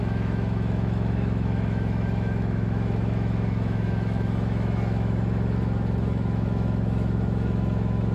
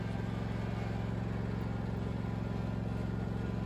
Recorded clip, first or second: second